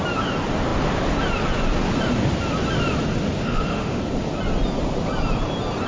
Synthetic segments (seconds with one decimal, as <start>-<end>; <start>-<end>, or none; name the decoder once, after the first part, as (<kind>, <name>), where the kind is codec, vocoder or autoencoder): 3.4-4.0 (autoencoder, DAC-VAE)